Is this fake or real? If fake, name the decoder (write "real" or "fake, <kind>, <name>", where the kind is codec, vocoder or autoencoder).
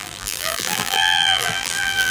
fake, vocoder, BigVGAN v2